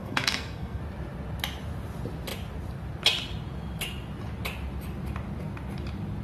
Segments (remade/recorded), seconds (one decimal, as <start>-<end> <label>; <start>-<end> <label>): 0.0-0.8 remade; 0.8-6.2 recorded